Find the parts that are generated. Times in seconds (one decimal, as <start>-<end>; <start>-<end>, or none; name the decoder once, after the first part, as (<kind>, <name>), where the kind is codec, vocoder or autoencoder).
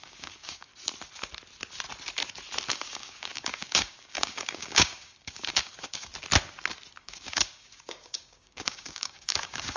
0.0-0.7 (codec, DAC); 2.7-6.1; 7.0-9.8